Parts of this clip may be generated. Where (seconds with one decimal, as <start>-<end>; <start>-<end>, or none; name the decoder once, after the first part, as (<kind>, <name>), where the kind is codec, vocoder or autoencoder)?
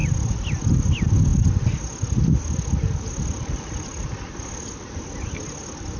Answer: 0.0-0.7 (vocoder, BigVGAN v2)